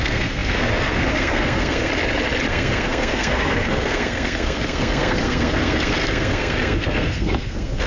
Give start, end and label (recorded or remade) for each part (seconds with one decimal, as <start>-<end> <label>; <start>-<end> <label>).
0.0-1.9 remade; 1.9-2.5 recorded; 2.5-7.9 remade